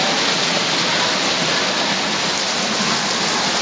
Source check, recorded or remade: recorded